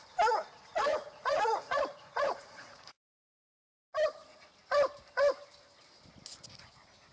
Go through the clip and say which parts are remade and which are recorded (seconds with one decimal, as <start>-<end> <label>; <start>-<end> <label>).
0.0-0.7 recorded; 0.7-3.0 remade; 3.0-7.1 recorded